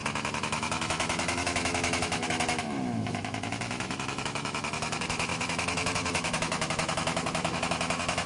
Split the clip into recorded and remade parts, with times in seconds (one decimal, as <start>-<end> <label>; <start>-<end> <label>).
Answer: 0.0-8.3 remade